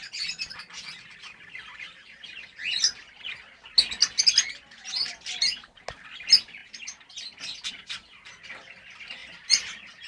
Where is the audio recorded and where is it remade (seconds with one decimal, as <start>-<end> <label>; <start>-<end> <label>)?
0.0-9.2 recorded; 9.2-10.1 remade